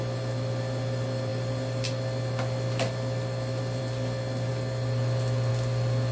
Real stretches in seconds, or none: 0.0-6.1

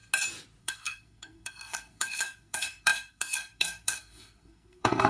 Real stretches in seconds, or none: 0.0-0.6

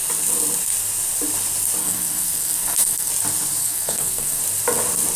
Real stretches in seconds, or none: 0.0-1.8; 3.1-3.6; 4.4-5.2

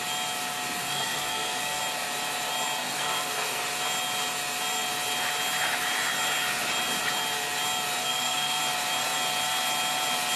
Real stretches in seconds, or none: 0.0-0.8; 1.8-2.8; 3.6-8.0; 8.6-10.4

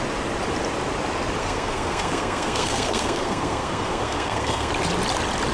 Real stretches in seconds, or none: 0.0-1.4; 4.7-5.5

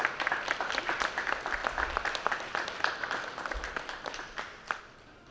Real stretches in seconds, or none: 0.0-5.3